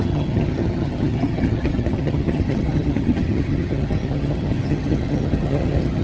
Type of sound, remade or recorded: remade